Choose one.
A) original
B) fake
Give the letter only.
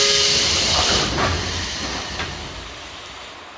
B